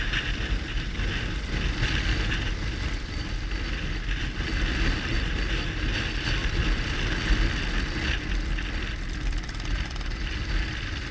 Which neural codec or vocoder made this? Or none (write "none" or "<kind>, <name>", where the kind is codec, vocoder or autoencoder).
none